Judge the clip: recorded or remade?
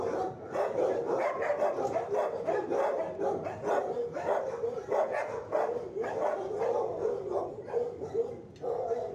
recorded